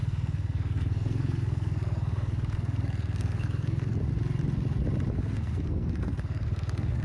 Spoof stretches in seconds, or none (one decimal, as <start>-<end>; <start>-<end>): 0.0-4.0; 5.1-7.0